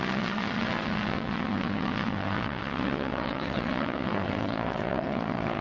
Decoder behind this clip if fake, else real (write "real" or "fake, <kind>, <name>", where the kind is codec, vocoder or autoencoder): fake, vocoder, WaveNeXt